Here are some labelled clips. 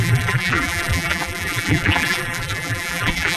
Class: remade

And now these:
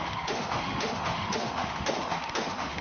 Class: remade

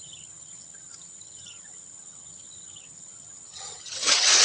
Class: remade